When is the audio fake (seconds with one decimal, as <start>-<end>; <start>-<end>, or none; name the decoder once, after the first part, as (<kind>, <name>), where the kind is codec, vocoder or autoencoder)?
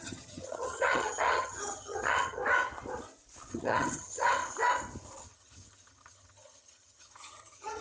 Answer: 0.0-2.4 (vocoder, HiFi-GAN); 3.5-4.4; 5.2-7.8